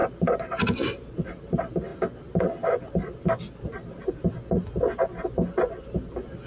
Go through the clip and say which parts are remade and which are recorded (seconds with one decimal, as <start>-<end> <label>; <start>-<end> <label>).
0.0-6.5 recorded